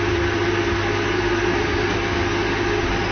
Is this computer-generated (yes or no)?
no